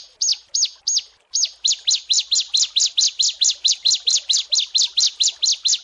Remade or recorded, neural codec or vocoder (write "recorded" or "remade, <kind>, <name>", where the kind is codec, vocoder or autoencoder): recorded